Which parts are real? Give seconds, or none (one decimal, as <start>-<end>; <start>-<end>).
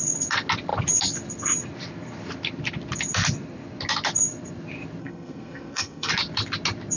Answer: 0.0-5.0; 6.1-7.0